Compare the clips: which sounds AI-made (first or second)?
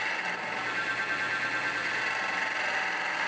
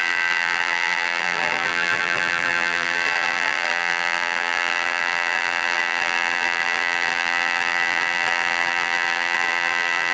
second